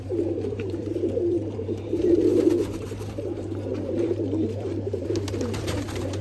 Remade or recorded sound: remade